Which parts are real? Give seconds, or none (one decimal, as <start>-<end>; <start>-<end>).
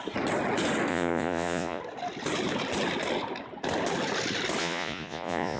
0.0-0.9; 1.8-4.6